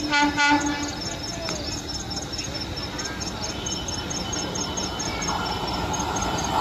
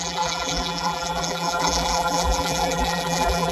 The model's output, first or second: second